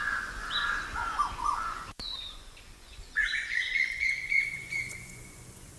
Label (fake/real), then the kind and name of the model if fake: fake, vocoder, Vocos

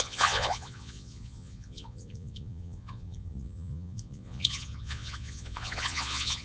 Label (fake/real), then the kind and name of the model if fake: fake, vocoder, Vocos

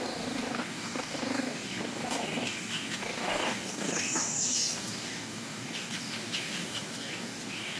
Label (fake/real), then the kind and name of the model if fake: fake, codec, DAC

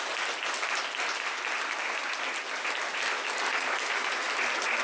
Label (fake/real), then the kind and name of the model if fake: real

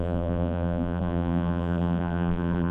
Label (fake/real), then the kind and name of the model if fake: fake, vocoder, BigVGAN v2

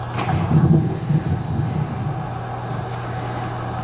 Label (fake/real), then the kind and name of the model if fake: real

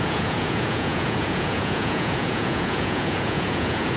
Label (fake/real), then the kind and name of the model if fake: fake, vocoder, Vocos